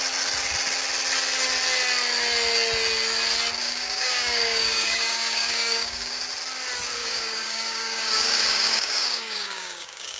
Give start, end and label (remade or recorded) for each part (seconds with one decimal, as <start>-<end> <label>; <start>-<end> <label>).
0.0-3.6 recorded; 3.6-6.2 remade; 6.2-7.0 recorded; 7.0-10.2 remade